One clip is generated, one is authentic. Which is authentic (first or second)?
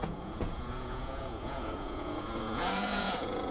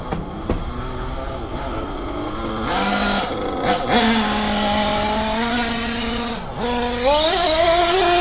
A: second